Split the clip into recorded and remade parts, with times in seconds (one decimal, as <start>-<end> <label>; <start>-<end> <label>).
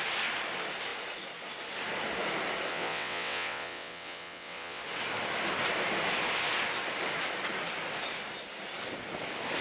0.0-2.7 recorded; 2.7-4.8 remade; 4.8-9.6 recorded